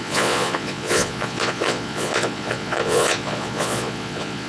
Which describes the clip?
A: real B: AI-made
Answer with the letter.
B